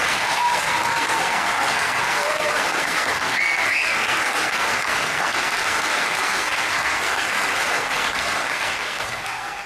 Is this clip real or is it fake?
fake